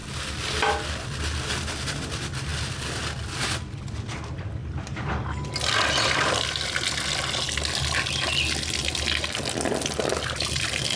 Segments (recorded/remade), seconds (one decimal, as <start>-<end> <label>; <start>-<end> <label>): 0.0-11.0 recorded